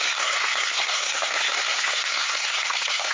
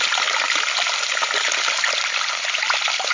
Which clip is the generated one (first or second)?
first